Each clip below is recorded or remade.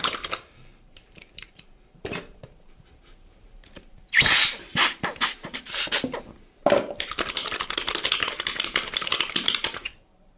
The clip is remade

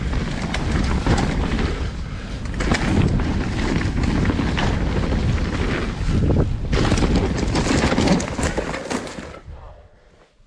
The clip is recorded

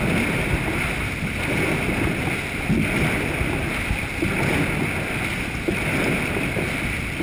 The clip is recorded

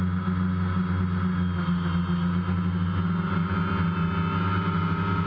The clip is recorded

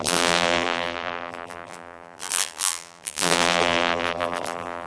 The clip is remade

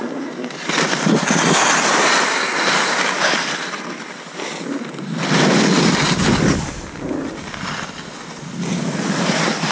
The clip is recorded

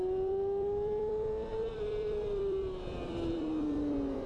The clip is remade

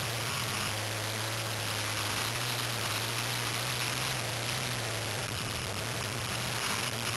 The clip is recorded